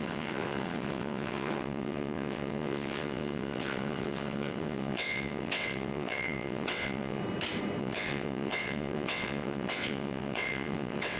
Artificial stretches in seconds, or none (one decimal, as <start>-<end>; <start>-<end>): 0.0-7.2; 7.8-11.2